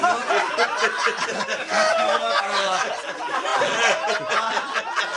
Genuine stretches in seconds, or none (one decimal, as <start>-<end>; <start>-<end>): 0.0-1.5; 2.9-5.2